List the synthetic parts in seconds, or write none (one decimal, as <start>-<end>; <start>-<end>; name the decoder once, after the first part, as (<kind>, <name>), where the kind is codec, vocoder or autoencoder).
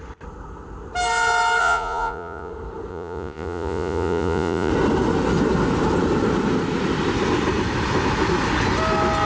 1.6-2.5 (vocoder, Vocos); 2.9-4.7